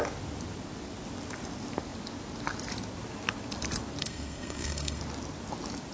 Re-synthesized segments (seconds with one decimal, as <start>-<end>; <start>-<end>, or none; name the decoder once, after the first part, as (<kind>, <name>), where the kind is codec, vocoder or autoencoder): 4.0-5.0 (codec, SNAC)